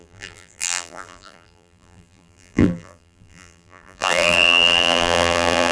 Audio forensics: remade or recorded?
remade